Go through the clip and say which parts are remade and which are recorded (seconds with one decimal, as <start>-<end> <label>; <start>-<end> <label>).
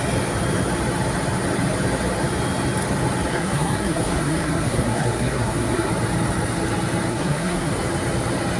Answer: 0.0-3.3 recorded; 3.3-5.9 remade; 5.9-7.1 recorded; 7.1-7.7 remade; 7.7-8.6 recorded